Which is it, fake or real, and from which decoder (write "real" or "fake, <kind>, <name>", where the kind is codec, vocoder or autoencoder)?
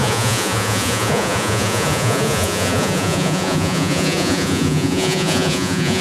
fake, vocoder, Vocos